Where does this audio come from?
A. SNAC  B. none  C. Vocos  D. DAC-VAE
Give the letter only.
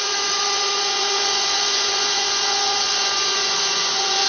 C